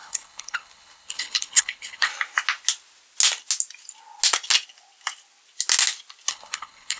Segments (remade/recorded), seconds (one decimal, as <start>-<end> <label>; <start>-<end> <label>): 0.0-2.1 remade; 2.1-6.3 recorded; 6.3-7.0 remade